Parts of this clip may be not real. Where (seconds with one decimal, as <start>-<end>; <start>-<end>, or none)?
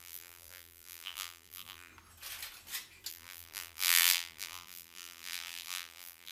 0.0-1.9; 3.1-6.3